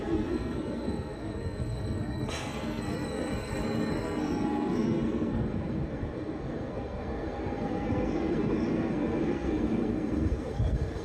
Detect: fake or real fake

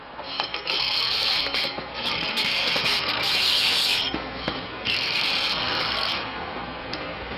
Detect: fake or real fake